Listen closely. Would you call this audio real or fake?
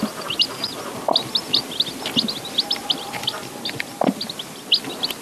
real